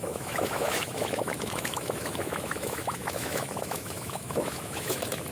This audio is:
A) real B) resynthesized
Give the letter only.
B